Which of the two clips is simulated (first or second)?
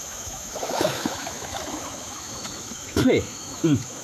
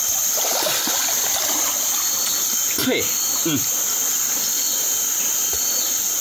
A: first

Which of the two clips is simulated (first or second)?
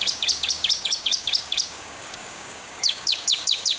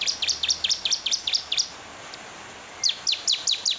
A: first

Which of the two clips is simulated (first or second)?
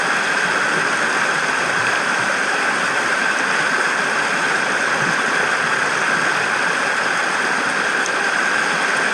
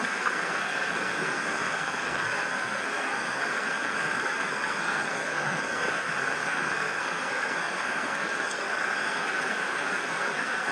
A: second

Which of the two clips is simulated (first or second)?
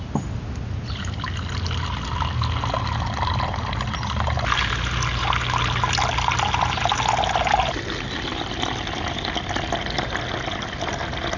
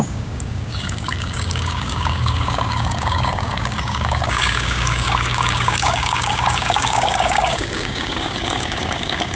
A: second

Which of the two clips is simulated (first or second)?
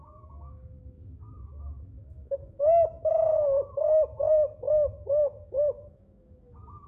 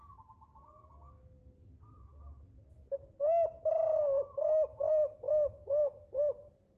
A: first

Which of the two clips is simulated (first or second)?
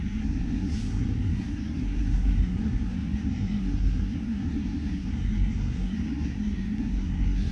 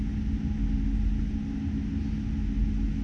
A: first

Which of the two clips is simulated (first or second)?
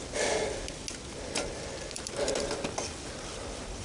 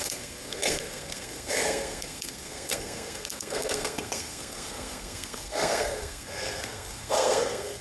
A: second